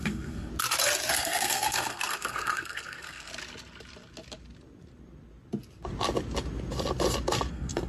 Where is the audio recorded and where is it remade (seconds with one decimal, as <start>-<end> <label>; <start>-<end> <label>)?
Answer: 0.0-0.5 remade; 0.5-1.1 recorded; 1.1-3.3 remade; 3.3-7.5 recorded; 7.5-7.9 remade